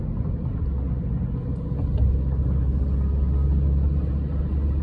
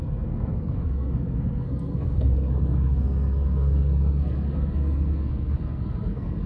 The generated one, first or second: second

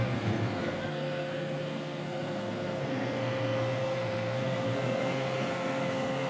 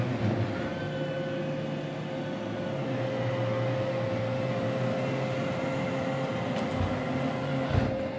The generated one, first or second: first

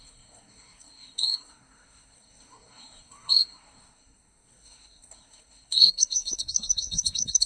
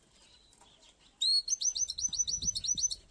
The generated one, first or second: first